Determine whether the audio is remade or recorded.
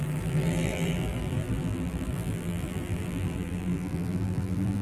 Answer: remade